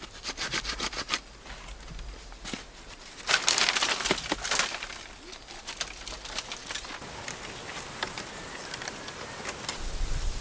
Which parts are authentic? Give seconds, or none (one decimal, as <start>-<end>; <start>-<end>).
0.0-10.4